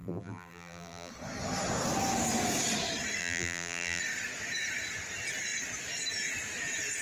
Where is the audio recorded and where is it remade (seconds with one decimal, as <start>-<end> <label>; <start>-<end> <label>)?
0.0-1.1 remade; 1.1-3.2 recorded; 3.2-4.0 remade; 4.0-7.0 recorded